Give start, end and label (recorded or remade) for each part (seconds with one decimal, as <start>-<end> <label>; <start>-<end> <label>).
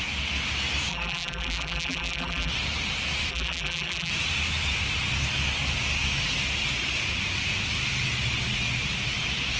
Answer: 0.0-0.9 recorded; 0.9-2.5 remade; 2.5-3.3 recorded; 3.3-4.1 remade; 4.1-9.6 recorded